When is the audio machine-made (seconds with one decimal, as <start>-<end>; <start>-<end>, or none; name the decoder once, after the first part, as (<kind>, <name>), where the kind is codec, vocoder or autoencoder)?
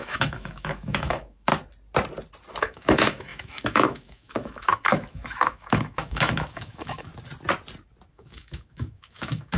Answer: 0.0-1.5 (autoencoder, DAC-VAE); 2.6-7.1; 8.1-9.6